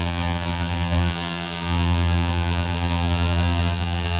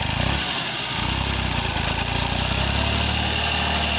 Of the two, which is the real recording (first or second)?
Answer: second